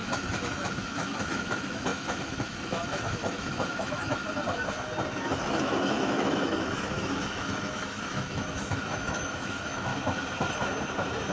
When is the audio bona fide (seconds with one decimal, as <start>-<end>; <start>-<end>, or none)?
4.2-5.1; 9.9-11.3